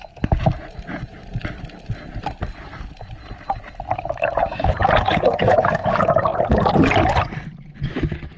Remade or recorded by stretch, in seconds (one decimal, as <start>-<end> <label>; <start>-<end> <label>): 0.0-8.4 recorded